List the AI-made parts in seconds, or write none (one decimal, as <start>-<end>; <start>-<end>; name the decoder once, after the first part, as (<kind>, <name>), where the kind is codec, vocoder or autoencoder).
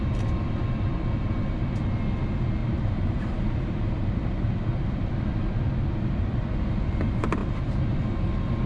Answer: 2.6-5.1 (vocoder, BigVGAN v2)